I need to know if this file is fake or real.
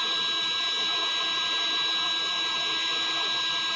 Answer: real